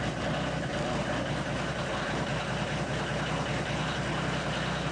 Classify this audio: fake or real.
real